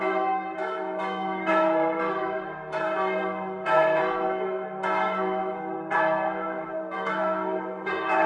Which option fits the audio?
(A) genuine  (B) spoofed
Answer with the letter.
B